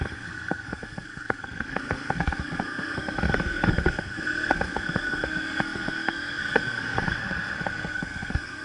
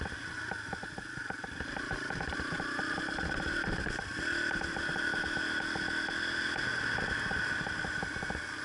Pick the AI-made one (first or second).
first